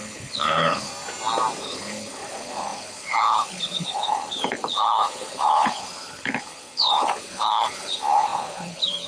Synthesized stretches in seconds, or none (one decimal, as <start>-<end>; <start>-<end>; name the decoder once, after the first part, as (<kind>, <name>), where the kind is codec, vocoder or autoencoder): 0.0-0.9 (codec, HILCodec); 1.6-9.1